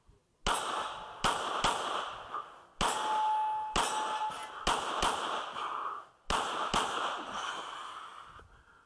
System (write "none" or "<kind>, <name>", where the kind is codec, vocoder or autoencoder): none